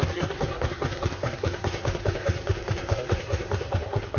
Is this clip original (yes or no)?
no